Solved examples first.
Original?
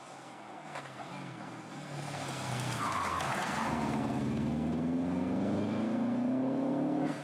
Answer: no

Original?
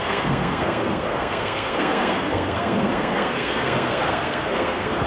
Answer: no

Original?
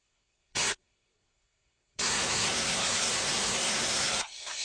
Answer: no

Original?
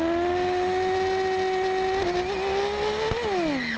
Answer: yes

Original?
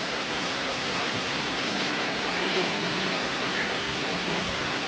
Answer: no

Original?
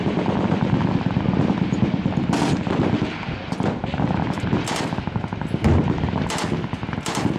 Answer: yes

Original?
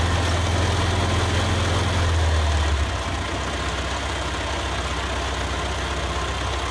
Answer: yes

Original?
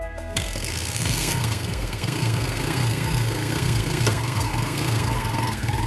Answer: no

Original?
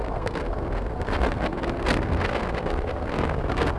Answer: no